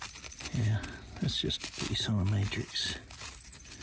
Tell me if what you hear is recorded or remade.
recorded